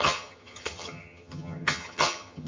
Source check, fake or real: fake